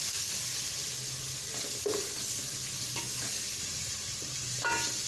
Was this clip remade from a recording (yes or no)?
no